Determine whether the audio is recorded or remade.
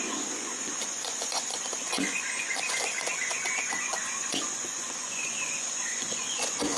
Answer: remade